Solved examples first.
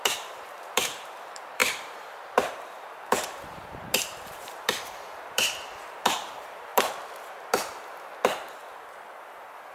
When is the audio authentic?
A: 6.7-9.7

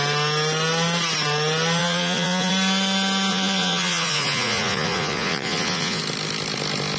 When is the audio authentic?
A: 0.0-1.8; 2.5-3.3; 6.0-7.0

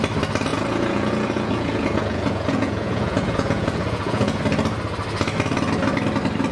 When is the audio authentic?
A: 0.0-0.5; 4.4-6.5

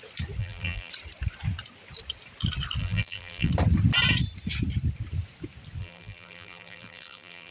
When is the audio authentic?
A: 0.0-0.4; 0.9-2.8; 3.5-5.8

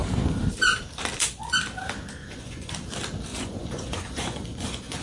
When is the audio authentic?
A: 0.0-2.2; 2.7-3.3

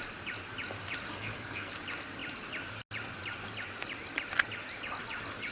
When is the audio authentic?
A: 0.0-1.1; 1.7-5.5